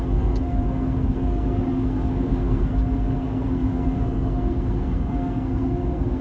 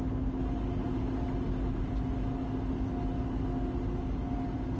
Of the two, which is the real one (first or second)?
second